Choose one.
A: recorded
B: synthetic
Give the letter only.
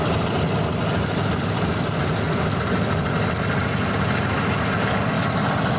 A